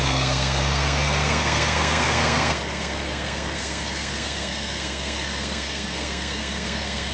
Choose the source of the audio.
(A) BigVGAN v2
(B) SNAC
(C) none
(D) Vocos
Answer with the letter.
B